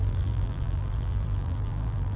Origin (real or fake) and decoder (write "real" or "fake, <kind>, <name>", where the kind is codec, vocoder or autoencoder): fake, vocoder, BigVGAN v2